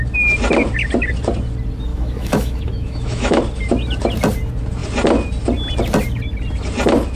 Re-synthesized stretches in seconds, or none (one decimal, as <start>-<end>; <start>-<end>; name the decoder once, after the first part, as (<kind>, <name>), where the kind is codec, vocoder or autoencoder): 1.9-3.4 (autoencoder, DAC-VAE)